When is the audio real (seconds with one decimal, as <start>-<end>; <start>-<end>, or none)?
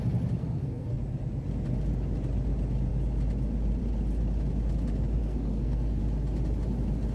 0.0-0.4; 1.0-5.2; 6.0-7.1